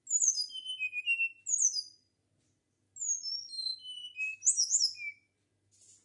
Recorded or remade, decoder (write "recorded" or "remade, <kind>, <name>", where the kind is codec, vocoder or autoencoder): recorded